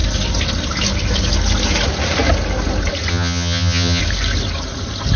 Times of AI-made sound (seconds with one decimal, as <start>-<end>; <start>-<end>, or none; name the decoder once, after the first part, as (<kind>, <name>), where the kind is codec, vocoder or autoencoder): 3.1-4.0 (vocoder, HiFi-GAN)